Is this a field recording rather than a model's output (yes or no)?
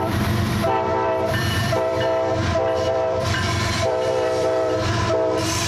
no